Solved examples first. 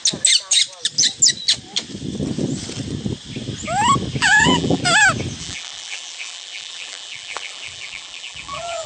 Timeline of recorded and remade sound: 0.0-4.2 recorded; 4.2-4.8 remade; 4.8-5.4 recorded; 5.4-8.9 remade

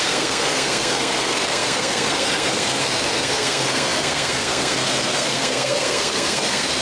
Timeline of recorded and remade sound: 0.0-6.8 remade

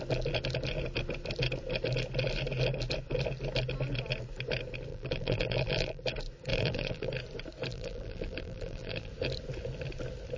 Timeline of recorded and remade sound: 0.0-4.9 recorded; 4.9-6.0 remade; 6.0-6.5 recorded; 6.5-7.1 remade; 7.1-7.7 recorded; 7.7-9.1 remade; 9.1-10.4 recorded

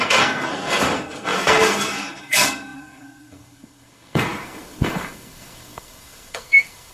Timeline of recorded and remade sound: 0.0-6.9 remade